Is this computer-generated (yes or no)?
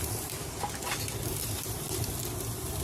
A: no